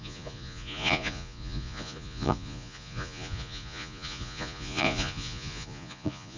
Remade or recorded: remade